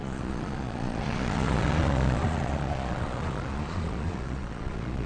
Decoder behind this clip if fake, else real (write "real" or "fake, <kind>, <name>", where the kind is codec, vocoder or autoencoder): fake, vocoder, Vocos